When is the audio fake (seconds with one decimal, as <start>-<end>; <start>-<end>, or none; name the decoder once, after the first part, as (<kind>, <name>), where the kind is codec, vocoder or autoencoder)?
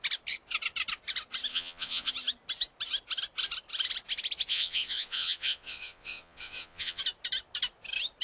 1.5-2.1 (vocoder, Vocos); 4.5-7.0